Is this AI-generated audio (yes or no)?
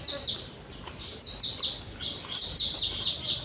no